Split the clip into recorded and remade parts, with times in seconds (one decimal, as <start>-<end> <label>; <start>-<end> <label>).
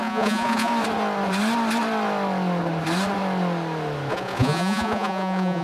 0.0-0.7 remade; 0.7-4.1 recorded; 4.1-5.6 remade